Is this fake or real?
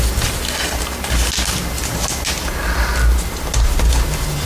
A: real